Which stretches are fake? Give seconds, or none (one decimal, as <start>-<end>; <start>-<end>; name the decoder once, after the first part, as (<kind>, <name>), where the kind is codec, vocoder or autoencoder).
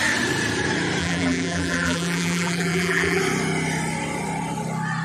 1.0-3.2 (vocoder, BigVGAN v2)